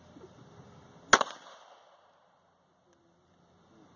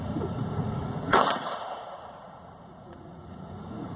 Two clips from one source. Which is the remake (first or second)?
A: second